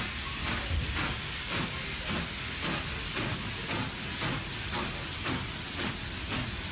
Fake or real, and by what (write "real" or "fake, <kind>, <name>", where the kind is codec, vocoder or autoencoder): real